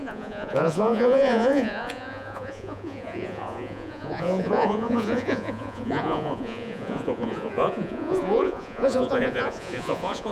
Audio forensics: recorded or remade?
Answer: remade